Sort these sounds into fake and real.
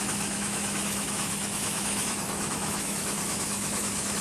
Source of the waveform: fake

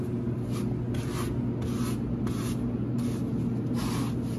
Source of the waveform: real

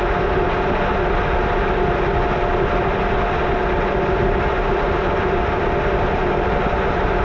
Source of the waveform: real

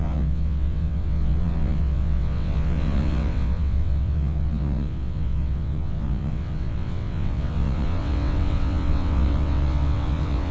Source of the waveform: fake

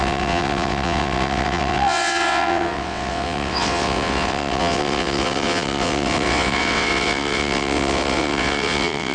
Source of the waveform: fake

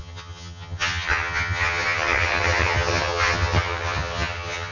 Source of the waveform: fake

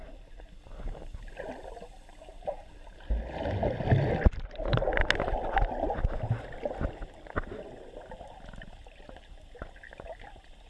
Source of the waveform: real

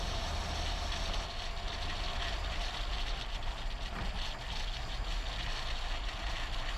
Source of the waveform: real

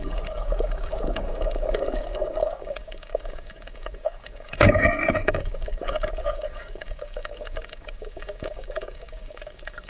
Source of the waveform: fake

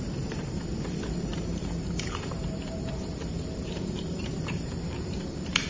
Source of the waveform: fake